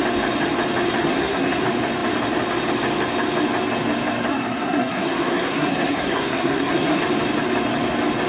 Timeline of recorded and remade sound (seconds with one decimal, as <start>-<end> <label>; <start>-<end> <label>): 0.0-1.0 recorded; 1.0-1.6 remade; 1.6-4.3 recorded; 4.3-7.0 remade; 7.0-8.3 recorded